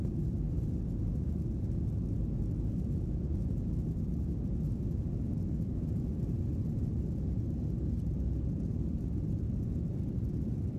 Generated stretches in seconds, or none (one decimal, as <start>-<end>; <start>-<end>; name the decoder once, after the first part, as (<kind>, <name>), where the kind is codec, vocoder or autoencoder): 0.0-4.1 (vocoder, BigVGAN v2); 5.8-10.8